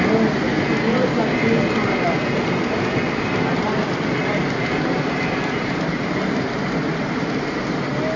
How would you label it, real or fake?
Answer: real